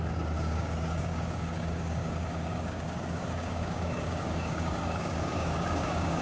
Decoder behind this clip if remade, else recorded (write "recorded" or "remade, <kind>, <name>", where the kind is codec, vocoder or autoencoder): remade, codec, DAC